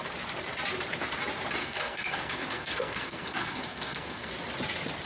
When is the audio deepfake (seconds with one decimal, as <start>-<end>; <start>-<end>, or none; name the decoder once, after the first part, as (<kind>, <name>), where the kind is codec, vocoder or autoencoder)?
1.6-4.3 (codec, SNAC)